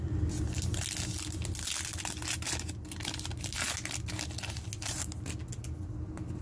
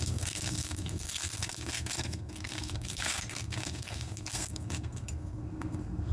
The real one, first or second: first